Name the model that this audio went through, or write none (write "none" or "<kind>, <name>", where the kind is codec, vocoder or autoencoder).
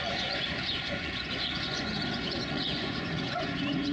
vocoder, Vocos